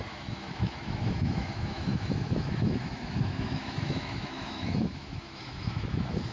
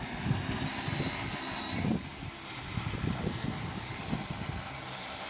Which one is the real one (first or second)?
second